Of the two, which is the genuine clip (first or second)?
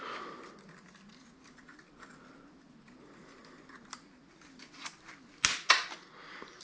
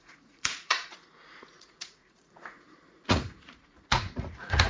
first